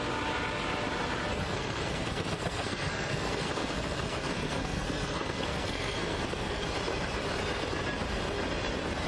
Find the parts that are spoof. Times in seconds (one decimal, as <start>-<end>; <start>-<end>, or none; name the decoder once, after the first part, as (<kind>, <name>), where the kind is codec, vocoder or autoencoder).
1.3-6.6 (codec, SNAC)